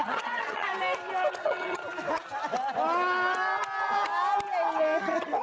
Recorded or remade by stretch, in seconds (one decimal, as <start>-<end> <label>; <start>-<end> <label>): 0.0-0.7 remade; 0.7-1.3 recorded; 1.3-1.8 remade; 1.8-5.0 recorded; 5.0-5.4 remade